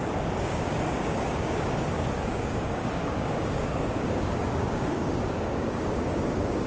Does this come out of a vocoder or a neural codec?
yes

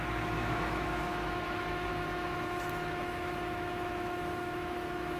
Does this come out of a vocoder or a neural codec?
yes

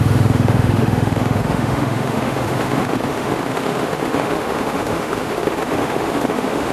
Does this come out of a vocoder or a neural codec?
yes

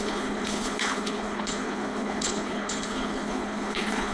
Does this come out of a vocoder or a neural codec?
yes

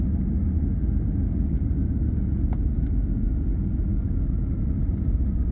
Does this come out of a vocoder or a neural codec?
no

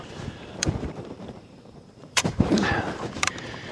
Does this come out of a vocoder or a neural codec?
yes